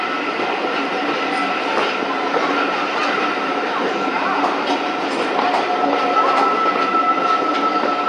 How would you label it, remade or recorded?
recorded